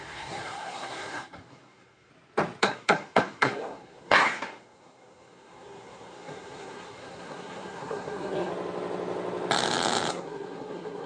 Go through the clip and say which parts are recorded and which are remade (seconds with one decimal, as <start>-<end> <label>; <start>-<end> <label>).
0.0-2.1 remade; 2.1-2.6 recorded; 2.6-8.5 remade; 8.5-10.1 recorded; 10.1-11.1 remade